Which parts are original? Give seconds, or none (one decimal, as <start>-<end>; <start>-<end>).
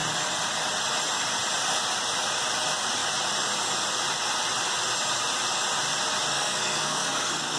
0.0-6.3